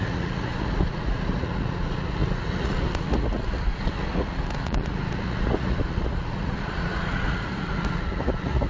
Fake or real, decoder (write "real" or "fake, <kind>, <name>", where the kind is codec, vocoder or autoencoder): fake, vocoder, Vocos